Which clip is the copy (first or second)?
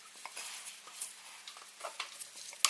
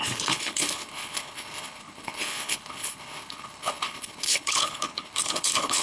second